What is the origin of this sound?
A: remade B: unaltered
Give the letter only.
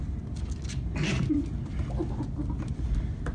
B